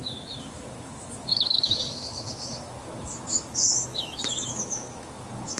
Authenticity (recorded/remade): remade